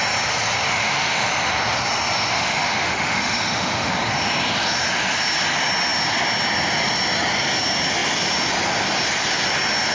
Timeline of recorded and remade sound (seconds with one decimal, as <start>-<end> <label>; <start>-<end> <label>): 0.0-0.7 recorded; 0.7-1.3 remade; 1.3-2.3 recorded; 2.3-3.9 remade; 3.9-9.9 recorded

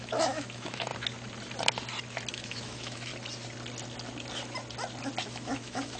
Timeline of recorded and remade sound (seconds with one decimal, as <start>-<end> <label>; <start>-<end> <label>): 0.0-0.9 remade; 0.9-2.3 recorded; 2.3-3.1 remade; 3.1-5.2 recorded; 5.2-6.0 remade